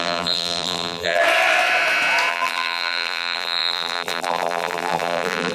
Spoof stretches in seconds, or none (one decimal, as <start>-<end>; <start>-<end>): 0.0-1.2; 2.3-5.5